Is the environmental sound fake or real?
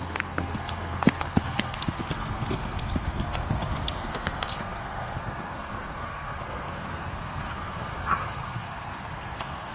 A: fake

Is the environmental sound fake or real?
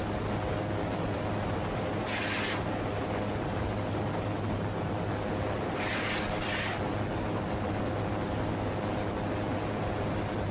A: real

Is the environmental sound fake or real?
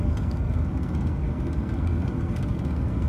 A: fake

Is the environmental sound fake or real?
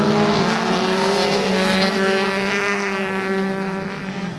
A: fake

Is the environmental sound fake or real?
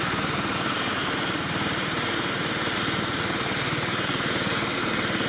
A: real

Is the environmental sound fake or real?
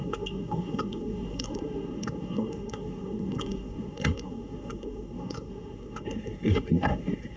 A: fake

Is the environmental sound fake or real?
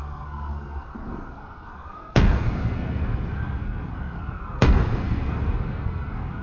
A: fake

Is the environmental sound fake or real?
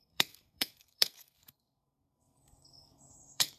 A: fake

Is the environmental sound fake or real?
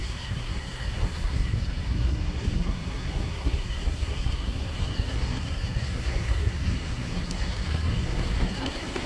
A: fake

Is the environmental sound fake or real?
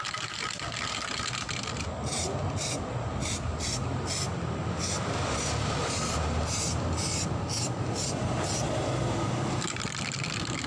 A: real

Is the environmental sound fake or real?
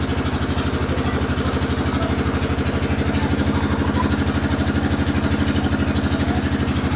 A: real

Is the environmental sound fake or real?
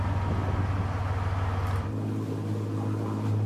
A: real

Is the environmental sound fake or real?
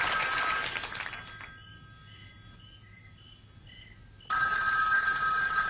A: real